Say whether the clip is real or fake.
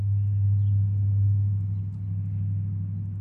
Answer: real